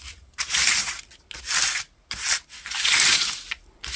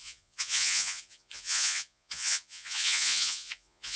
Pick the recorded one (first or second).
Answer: first